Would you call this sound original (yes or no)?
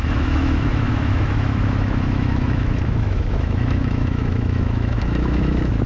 no